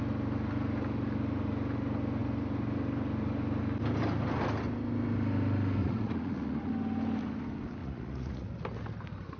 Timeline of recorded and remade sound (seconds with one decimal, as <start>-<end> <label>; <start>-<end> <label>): 0.0-5.8 recorded; 5.8-6.7 remade; 6.7-7.8 recorded; 7.8-8.5 remade; 8.5-9.4 recorded